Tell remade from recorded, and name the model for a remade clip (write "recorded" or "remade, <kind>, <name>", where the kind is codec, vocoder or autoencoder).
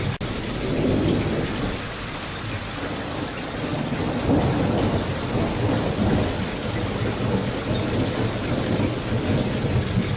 recorded